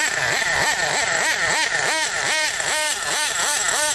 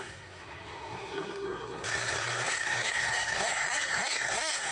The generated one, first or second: second